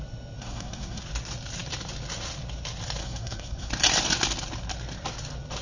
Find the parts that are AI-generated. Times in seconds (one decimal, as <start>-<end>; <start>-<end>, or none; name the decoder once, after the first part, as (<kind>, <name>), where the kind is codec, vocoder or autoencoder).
0.4-1.0 (codec, SNAC); 3.0-3.7